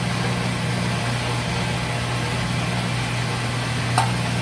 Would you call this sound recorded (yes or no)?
yes